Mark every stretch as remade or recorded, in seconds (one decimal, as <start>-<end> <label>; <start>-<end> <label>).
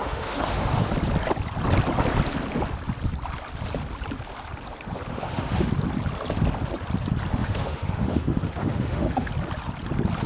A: 0.0-0.9 remade; 0.9-5.1 recorded; 5.1-5.7 remade; 5.7-7.4 recorded; 7.4-9.3 remade; 9.3-10.3 recorded